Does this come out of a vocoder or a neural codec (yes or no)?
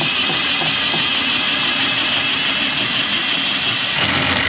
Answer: no